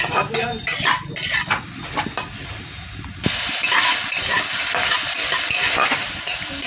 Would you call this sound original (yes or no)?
yes